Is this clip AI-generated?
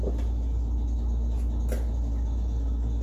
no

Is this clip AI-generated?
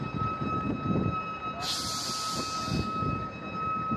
no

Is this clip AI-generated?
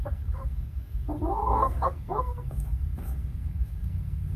yes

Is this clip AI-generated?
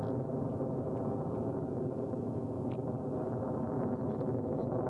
no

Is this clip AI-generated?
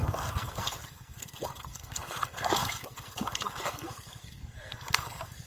yes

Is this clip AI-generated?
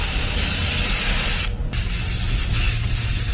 no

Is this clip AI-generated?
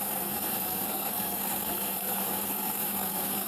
yes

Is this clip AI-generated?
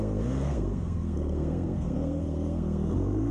yes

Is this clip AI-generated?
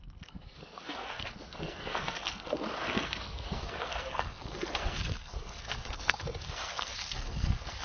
yes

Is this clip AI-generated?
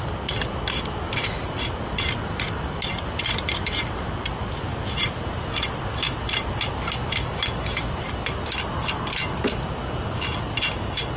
no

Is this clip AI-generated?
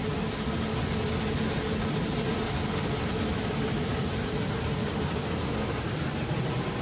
no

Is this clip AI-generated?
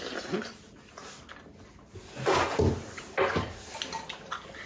no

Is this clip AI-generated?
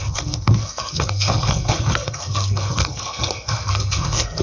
yes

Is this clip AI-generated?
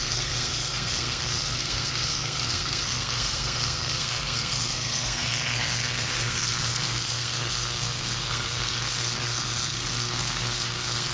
yes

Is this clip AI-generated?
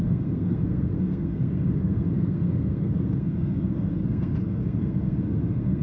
yes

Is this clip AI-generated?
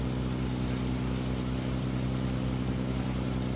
no